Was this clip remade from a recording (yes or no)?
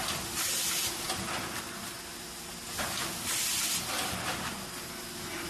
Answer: no